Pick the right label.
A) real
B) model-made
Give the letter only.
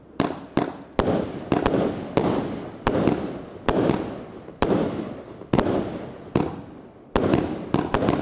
A